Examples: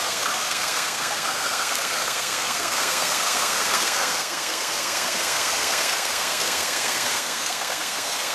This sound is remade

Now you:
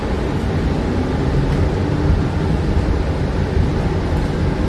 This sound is recorded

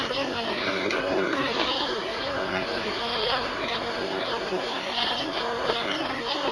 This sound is remade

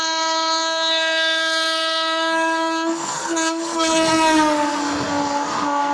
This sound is remade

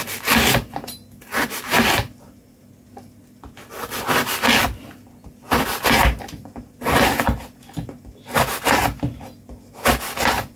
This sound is recorded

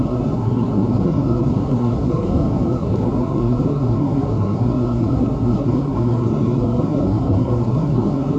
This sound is remade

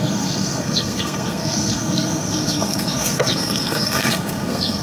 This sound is remade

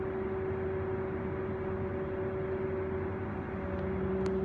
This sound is recorded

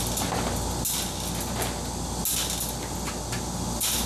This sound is recorded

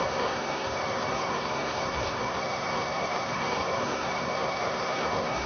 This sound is remade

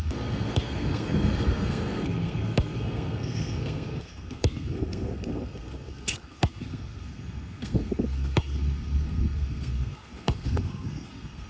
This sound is remade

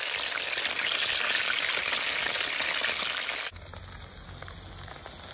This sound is recorded